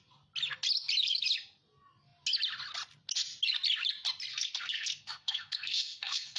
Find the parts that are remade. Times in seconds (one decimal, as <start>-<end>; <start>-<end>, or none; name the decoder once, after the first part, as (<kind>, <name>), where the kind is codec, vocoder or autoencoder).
4.3-6.4 (codec, SNAC)